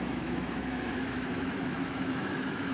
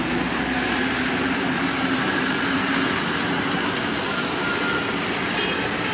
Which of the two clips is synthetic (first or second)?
first